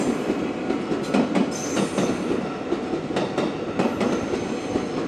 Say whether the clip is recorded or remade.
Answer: recorded